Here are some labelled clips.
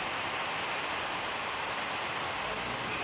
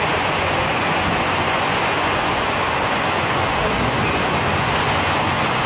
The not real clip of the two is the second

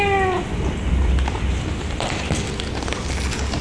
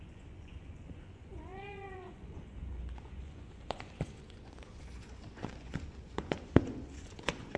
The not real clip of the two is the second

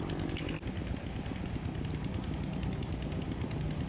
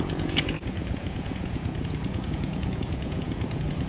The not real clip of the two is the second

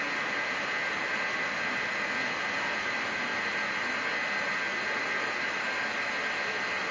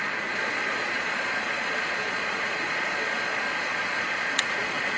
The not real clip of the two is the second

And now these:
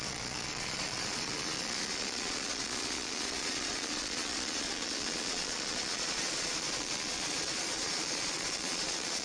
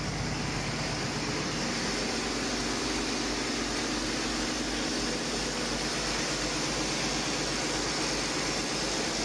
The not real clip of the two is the first